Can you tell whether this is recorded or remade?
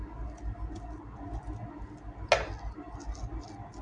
recorded